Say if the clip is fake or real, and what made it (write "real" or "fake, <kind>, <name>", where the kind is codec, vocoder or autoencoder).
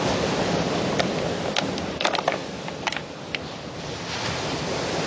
real